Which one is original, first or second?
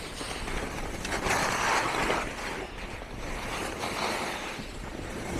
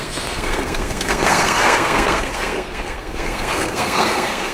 first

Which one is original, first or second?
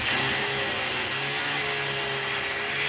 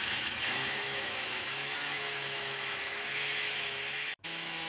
first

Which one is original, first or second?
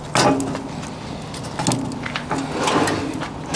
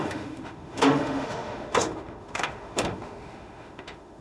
first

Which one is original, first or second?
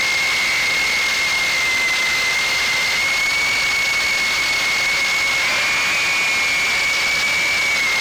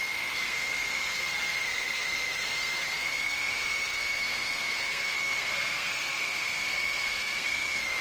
first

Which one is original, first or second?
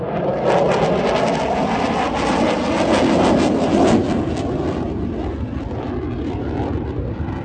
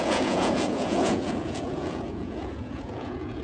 first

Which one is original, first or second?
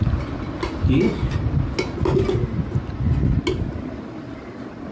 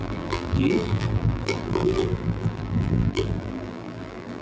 first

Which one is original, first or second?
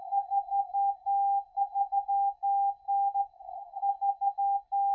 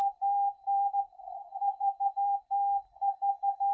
first